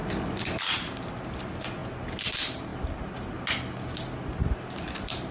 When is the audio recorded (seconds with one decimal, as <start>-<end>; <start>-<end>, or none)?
0.0-5.3